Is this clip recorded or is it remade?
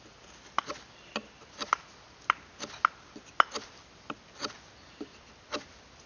recorded